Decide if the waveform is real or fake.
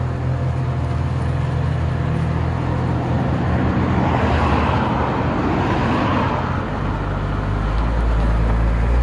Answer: real